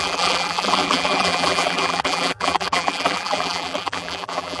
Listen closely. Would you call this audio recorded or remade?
remade